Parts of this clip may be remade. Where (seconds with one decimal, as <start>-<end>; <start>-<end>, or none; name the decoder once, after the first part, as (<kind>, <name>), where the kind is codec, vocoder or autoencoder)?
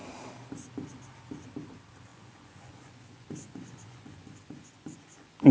2.1-5.5 (vocoder, Vocos)